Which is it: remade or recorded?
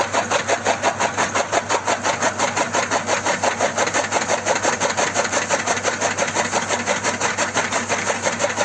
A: recorded